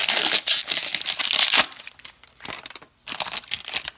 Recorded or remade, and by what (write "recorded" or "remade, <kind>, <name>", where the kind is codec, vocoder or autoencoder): remade, vocoder, BigVGAN v2